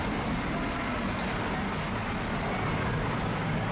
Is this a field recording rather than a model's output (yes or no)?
yes